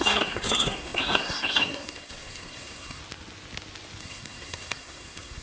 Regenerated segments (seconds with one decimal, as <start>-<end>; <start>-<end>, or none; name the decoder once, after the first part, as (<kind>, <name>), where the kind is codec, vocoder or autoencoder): 0.0-3.0 (codec, SNAC); 4.0-5.4